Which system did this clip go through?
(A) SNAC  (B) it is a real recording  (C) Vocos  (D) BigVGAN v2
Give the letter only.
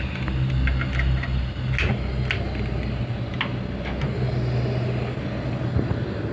B